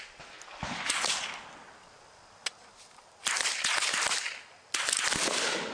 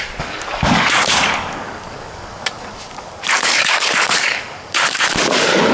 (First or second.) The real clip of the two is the first